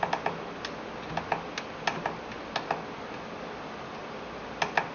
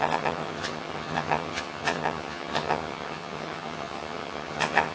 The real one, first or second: first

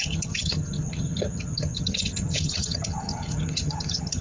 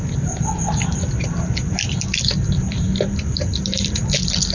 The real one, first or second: second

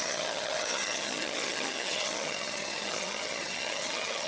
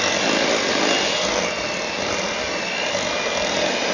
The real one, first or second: second